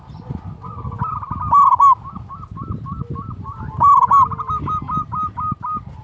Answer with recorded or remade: recorded